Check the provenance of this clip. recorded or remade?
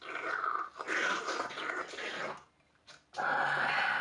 recorded